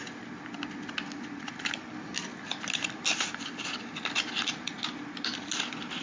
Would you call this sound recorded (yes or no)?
yes